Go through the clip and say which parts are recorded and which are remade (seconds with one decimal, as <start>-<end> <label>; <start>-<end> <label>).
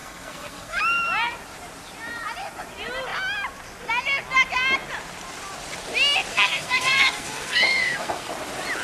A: 0.0-0.8 remade; 0.8-6.3 recorded; 6.3-8.3 remade; 8.3-8.8 recorded